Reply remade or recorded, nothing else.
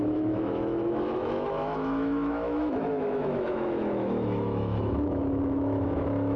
remade